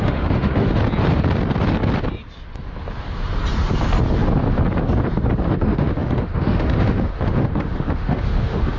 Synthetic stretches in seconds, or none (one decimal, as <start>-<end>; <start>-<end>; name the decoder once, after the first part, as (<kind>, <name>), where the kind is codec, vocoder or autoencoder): 0.0-0.8 (autoencoder, DAC-VAE); 5.5-8.8